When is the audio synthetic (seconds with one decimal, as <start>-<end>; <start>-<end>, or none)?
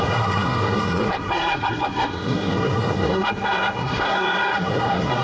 0.0-5.2